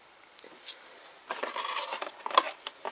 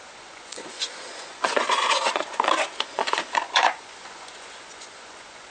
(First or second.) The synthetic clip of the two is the second